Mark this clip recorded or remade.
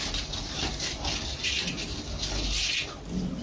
recorded